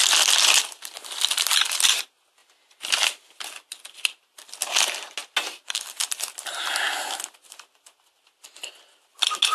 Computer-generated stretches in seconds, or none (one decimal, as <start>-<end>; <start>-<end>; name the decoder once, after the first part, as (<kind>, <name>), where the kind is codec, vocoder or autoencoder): none